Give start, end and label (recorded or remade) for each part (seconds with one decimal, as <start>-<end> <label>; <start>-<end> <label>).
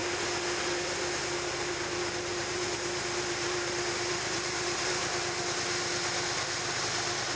0.0-2.3 recorded; 2.3-5.2 remade; 5.2-7.4 recorded